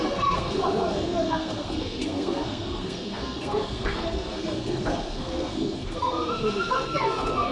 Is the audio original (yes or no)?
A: no